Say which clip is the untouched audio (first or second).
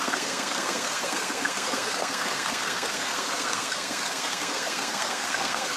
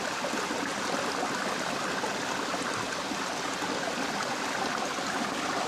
second